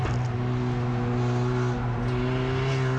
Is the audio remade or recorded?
recorded